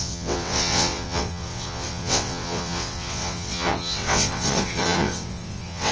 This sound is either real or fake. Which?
fake